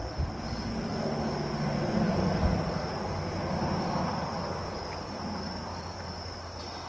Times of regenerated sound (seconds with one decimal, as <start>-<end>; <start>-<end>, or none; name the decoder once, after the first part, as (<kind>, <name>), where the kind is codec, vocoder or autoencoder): none